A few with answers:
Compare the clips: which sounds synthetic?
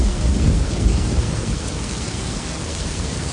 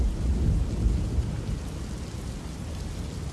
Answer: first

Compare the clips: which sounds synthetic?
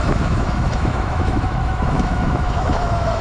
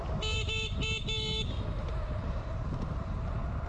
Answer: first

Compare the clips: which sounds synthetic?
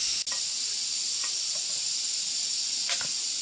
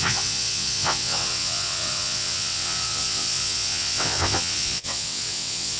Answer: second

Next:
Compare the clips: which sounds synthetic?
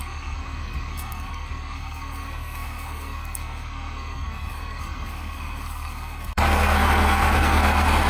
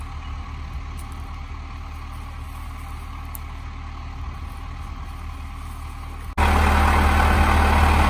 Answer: first